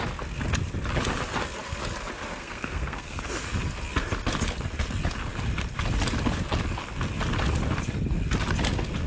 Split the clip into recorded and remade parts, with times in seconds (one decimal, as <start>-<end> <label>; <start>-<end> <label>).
0.0-2.3 recorded; 2.3-3.2 remade; 3.2-9.1 recorded